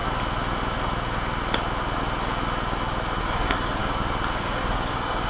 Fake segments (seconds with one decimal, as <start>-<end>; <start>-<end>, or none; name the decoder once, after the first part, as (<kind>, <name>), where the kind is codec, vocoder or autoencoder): 3.2-3.8 (codec, DAC); 4.4-5.3